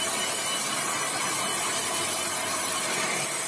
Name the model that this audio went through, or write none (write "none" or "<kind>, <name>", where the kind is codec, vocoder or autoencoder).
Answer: none